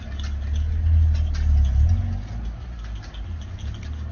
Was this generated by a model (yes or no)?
no